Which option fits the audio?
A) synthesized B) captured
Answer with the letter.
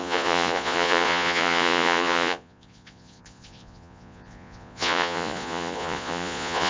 A